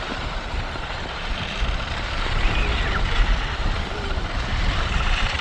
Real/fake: fake